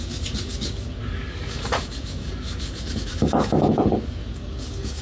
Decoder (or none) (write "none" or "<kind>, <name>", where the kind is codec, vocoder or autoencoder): codec, DAC